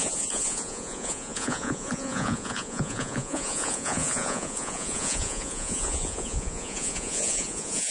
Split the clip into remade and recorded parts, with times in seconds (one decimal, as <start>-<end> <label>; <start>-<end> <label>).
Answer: 0.0-7.9 remade